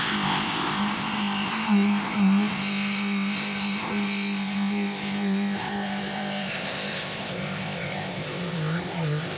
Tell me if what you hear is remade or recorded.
remade